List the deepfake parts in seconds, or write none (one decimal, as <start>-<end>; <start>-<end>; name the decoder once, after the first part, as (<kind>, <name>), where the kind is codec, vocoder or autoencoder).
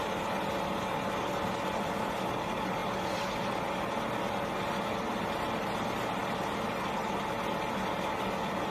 none